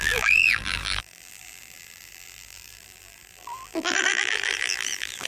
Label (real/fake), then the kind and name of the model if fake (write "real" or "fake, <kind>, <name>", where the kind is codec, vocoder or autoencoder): fake, vocoder, BigVGAN v2